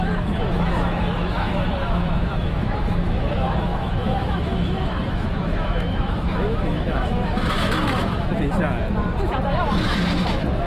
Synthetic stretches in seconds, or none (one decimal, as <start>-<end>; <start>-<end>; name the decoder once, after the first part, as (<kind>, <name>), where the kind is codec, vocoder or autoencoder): 0.0-8.3 (autoencoder, DAC-VAE); 9.5-10.7